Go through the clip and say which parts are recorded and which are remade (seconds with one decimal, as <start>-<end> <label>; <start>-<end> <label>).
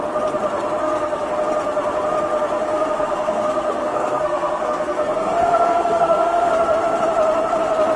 0.0-0.8 recorded; 0.8-1.3 remade; 1.3-2.7 recorded; 2.7-6.8 remade; 6.8-8.0 recorded